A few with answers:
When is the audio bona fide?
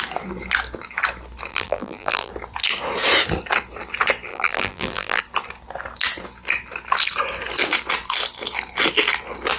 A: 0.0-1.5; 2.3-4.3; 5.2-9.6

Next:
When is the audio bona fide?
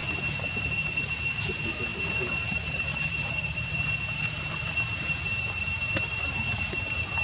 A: none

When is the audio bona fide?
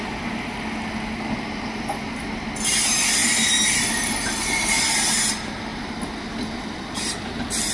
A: 0.0-3.2; 4.3-7.7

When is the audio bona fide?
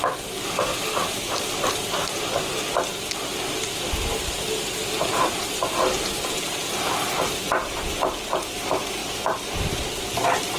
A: 0.0-9.0; 9.8-10.6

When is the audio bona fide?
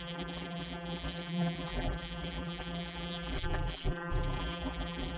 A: none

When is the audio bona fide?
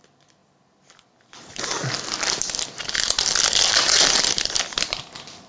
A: 0.4-3.7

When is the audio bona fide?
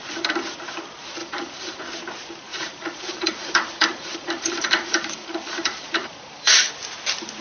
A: 0.0-1.2; 1.8-2.5; 6.7-7.4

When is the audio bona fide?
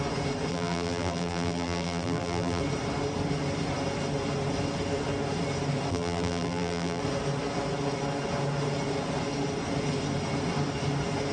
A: 0.0-0.5; 2.6-5.9; 7.0-11.3